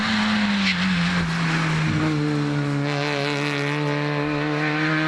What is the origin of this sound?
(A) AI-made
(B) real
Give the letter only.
B